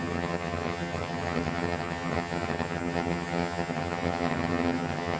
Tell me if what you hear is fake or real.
fake